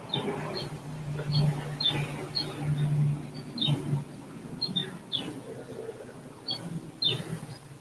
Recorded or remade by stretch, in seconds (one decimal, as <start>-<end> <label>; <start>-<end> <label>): 0.0-7.8 recorded